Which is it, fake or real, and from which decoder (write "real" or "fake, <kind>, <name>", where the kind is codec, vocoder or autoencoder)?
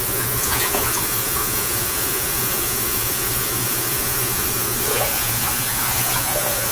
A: fake, vocoder, Vocos